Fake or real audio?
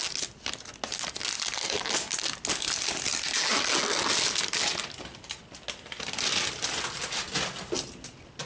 real